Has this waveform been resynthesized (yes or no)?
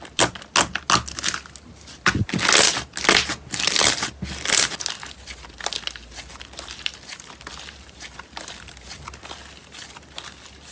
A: no